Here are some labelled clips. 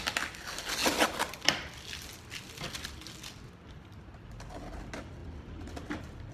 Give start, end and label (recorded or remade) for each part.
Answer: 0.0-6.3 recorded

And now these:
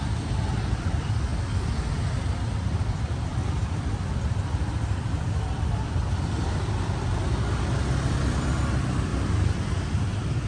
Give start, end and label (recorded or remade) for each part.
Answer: 0.0-3.3 recorded; 3.3-7.3 remade; 7.3-10.5 recorded

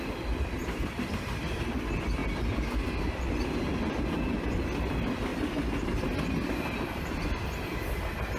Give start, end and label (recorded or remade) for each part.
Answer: 0.0-8.4 recorded

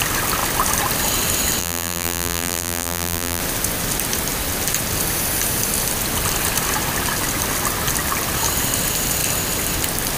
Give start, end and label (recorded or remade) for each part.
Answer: 0.0-1.6 recorded; 1.6-3.4 remade; 3.4-10.2 recorded

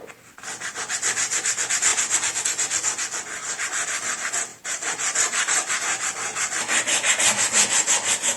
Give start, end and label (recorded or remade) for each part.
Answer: 0.0-4.5 recorded; 4.5-5.7 remade; 5.7-6.3 recorded; 6.3-7.1 remade; 7.1-8.4 recorded

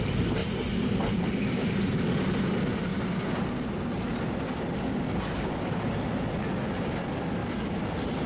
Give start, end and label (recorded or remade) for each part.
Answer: 0.0-0.4 recorded; 0.4-2.2 remade; 2.2-7.4 recorded; 7.4-8.3 remade

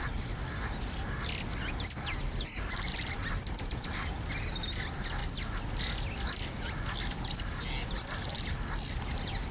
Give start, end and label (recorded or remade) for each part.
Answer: 0.0-2.9 recorded; 2.9-4.1 remade; 4.1-9.5 recorded